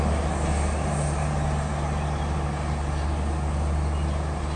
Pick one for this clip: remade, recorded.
recorded